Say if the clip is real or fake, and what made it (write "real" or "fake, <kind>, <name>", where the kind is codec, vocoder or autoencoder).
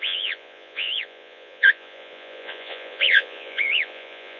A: fake, vocoder, Vocos